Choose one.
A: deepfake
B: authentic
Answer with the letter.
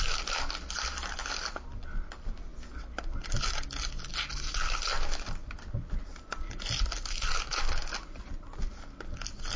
B